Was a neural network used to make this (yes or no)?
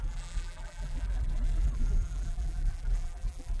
yes